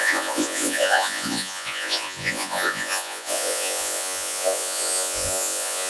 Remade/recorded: remade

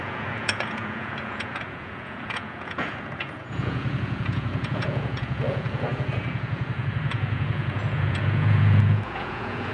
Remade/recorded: remade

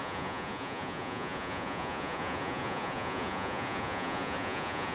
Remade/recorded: remade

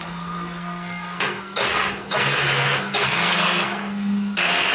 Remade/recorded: remade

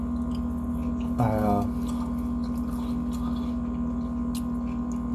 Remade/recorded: recorded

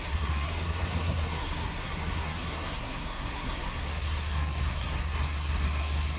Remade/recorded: remade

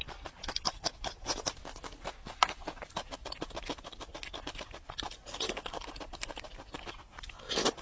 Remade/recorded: recorded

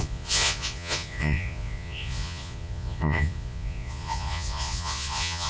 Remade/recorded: remade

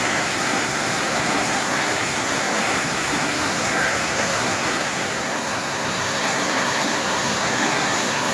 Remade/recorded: remade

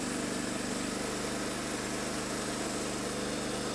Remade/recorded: recorded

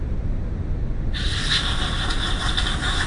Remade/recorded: remade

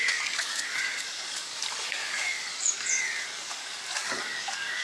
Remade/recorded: remade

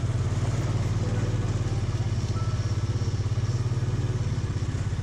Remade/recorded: recorded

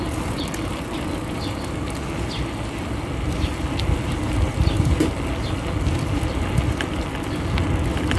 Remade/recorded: recorded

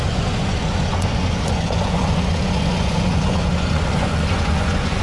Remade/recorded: remade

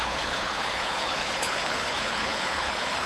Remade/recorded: remade